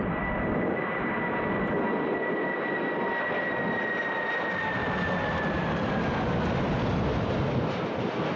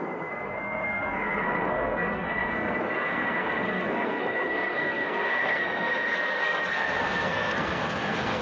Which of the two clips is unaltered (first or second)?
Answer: first